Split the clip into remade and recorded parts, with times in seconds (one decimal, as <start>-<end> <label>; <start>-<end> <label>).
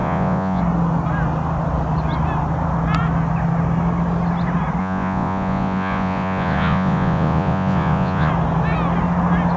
0.0-0.6 remade; 0.6-4.8 recorded; 4.8-8.3 remade; 8.3-9.6 recorded